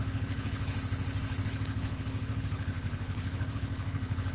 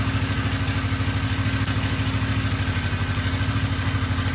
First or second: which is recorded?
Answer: second